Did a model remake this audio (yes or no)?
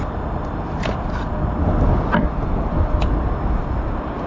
no